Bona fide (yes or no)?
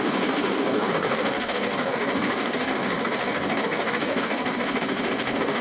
no